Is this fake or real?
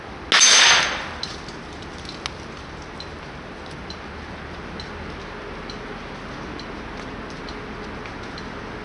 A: real